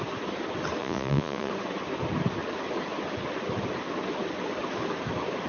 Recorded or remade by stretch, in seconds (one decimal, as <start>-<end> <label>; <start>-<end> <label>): 0.0-0.8 recorded; 0.8-1.5 remade; 1.5-5.5 recorded